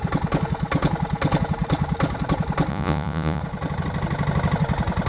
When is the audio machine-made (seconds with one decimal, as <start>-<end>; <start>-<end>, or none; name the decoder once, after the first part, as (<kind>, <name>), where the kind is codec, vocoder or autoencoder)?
2.7-3.4 (vocoder, Vocos)